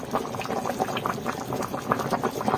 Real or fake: real